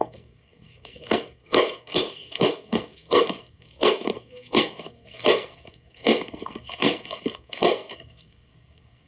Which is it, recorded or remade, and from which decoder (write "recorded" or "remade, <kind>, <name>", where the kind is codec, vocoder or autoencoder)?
remade, codec, SNAC